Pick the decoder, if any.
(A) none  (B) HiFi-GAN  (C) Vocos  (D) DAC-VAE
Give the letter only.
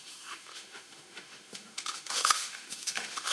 D